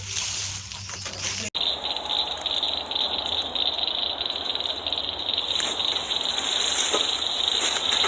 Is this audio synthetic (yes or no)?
no